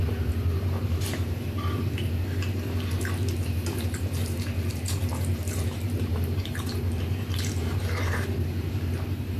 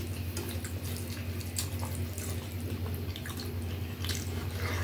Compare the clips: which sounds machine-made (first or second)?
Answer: first